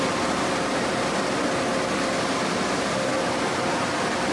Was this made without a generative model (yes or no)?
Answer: yes